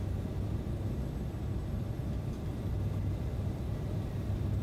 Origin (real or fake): real